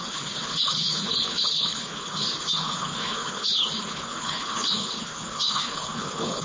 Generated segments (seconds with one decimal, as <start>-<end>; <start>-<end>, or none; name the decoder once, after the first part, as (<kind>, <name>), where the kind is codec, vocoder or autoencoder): 0.0-6.4 (codec, HILCodec)